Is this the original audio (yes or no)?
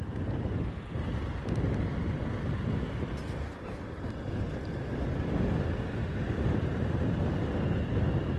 yes